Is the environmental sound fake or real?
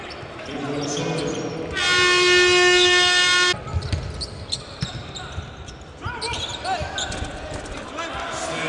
real